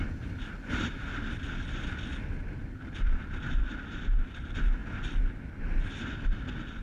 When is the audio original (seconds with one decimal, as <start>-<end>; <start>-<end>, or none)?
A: 0.0-6.8